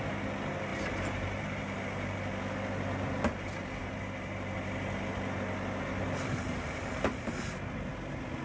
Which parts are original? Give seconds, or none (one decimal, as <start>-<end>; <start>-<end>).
0.0-8.4